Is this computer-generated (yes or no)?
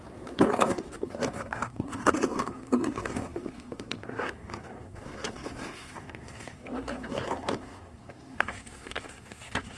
yes